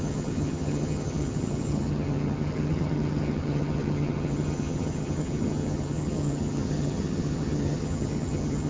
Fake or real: fake